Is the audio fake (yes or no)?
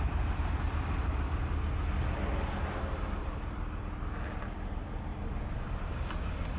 no